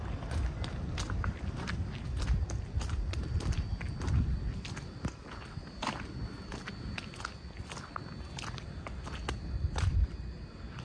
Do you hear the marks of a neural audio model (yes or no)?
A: no